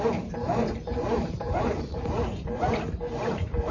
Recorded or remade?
remade